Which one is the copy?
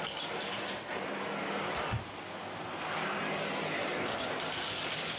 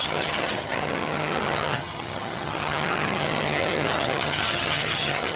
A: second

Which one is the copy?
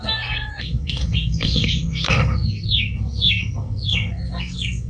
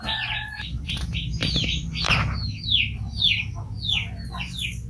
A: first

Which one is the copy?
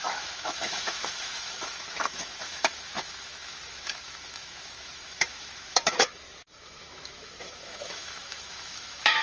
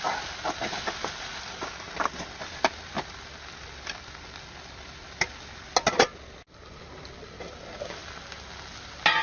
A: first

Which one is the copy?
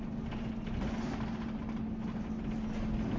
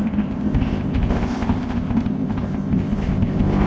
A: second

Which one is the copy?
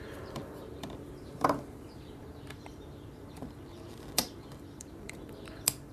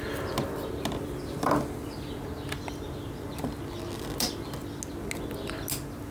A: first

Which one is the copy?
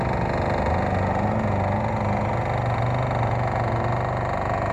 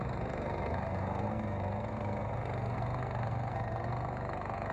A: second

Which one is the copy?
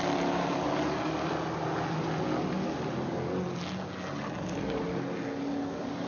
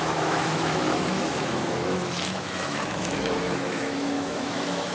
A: second